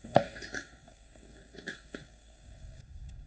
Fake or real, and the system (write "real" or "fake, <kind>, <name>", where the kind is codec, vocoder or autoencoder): fake, codec, SNAC